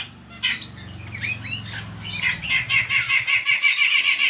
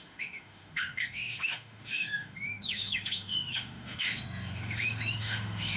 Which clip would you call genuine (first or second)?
first